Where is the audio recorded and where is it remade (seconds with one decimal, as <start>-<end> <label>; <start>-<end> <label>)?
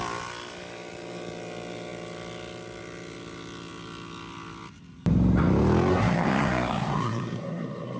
0.0-5.9 recorded; 5.9-8.0 remade